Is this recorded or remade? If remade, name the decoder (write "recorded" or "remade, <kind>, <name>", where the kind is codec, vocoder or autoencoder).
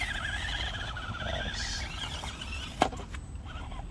recorded